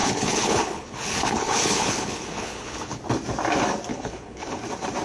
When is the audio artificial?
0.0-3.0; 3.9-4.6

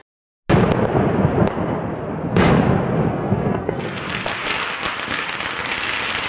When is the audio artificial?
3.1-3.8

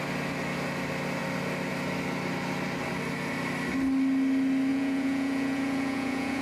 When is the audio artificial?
4.7-6.4